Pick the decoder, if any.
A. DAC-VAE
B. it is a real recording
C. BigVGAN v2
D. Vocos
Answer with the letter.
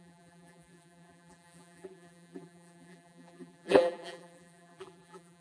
C